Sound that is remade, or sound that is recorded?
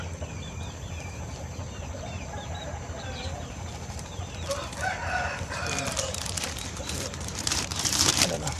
remade